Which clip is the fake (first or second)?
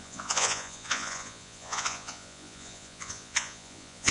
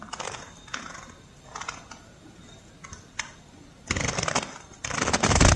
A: first